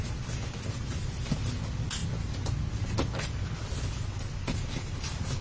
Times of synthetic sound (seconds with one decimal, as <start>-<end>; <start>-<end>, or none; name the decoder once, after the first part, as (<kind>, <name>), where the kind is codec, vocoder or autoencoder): none